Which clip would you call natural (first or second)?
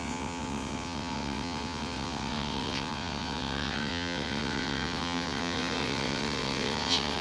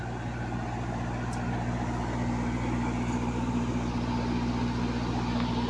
second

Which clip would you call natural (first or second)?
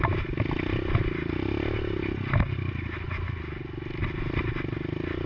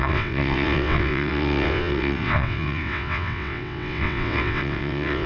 first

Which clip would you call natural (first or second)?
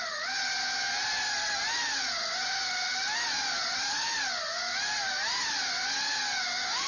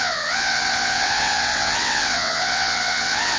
first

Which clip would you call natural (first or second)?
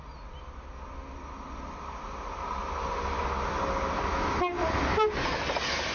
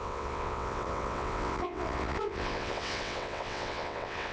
first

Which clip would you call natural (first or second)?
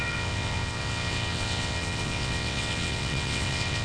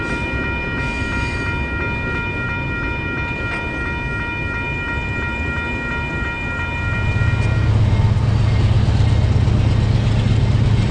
second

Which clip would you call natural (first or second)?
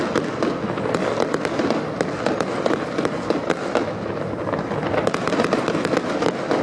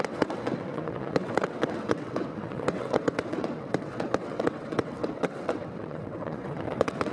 first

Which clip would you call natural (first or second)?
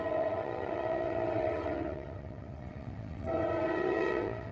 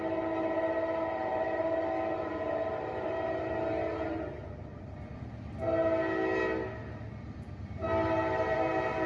second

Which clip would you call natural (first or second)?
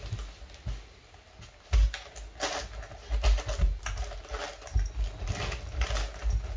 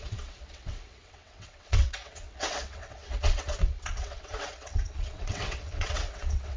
first